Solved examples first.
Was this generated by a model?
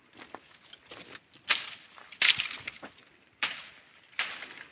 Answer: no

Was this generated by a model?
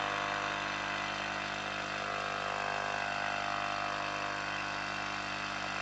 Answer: no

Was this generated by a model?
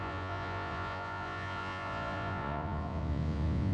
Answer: yes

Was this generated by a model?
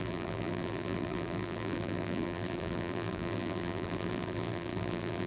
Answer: yes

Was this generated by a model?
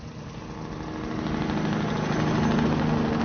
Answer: no